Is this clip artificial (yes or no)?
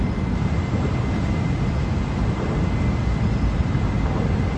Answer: no